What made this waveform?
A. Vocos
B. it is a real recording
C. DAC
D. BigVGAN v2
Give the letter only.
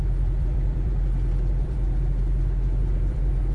D